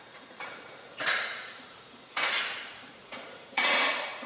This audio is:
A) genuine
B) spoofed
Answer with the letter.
B